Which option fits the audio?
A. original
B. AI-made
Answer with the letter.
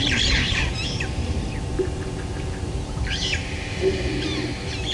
B